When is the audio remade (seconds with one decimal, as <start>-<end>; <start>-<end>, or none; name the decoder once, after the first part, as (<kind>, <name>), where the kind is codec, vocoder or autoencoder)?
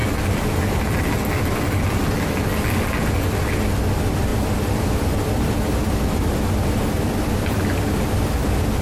none